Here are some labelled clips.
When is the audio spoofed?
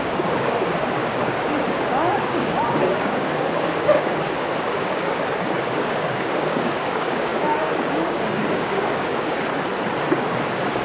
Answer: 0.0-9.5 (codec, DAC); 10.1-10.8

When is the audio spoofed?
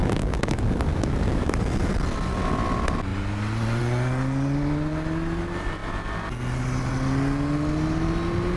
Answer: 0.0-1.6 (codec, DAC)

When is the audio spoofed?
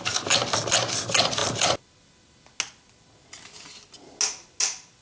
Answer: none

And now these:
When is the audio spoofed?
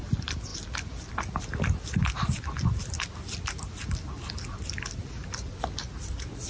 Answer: none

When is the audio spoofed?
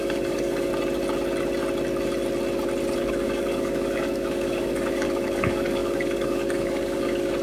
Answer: 0.0-0.7 (codec, DAC); 3.0-7.4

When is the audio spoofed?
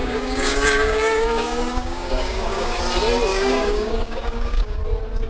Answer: 0.0-2.8 (codec, DAC); 3.3-4.8